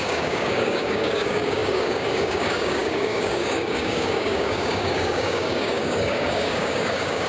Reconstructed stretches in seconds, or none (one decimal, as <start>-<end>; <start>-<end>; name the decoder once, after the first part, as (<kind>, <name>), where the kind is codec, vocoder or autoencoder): 0.0-7.3 (codec, DAC)